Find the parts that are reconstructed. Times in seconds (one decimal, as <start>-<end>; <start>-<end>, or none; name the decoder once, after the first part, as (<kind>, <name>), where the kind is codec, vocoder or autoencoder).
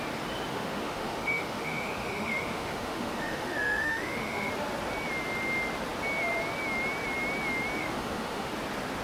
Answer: 0.5-4.5 (autoencoder, DAC-VAE); 7.8-8.5